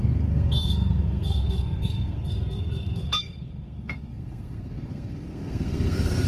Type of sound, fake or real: fake